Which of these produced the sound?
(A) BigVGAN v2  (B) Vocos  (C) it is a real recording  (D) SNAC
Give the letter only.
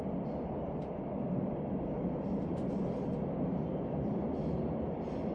C